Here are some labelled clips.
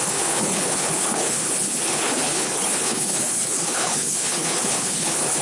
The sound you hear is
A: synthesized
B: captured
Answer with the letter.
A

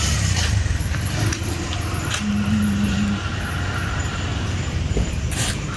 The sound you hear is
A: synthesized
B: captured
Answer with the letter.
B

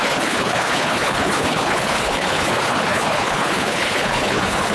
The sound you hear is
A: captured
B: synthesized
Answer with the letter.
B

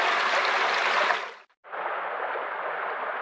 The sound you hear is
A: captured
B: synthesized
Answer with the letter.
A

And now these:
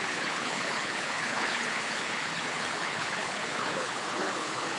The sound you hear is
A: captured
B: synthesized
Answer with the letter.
B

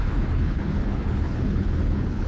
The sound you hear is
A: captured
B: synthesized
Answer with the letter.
B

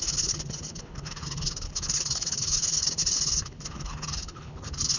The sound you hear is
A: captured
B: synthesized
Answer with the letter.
B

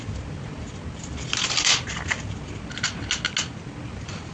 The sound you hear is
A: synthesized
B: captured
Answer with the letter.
B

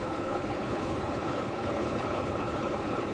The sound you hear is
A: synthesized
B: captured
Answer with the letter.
A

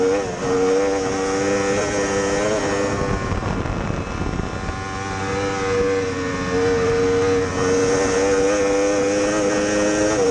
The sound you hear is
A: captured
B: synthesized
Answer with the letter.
A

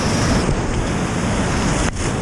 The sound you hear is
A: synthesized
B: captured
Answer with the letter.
B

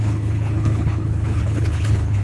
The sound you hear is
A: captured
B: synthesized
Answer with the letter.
B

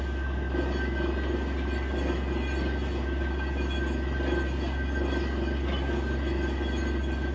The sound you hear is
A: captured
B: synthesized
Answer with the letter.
A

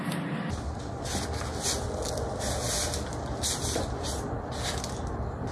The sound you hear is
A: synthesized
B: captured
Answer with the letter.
B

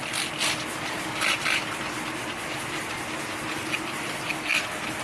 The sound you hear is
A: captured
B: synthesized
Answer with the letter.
A